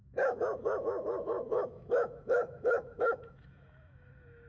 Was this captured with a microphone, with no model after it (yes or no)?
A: no